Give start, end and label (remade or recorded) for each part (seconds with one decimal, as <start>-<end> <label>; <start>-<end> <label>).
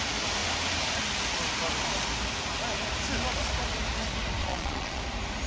0.0-4.4 recorded; 4.4-5.0 remade; 5.0-5.5 recorded